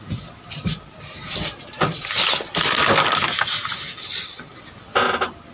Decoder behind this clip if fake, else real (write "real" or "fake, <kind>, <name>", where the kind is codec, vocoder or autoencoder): real